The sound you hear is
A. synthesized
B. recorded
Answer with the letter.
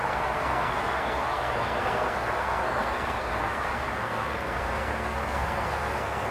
A